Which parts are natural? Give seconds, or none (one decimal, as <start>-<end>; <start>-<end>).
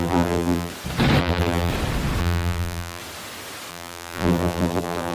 0.7-1.2; 1.7-2.2; 3.0-3.7